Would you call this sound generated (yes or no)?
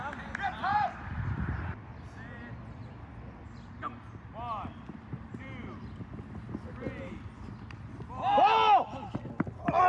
no